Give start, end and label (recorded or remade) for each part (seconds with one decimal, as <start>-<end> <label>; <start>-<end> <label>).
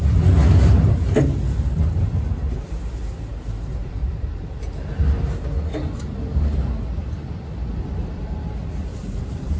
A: 0.0-4.0 recorded; 4.0-4.6 remade; 4.6-8.9 recorded; 8.9-9.6 remade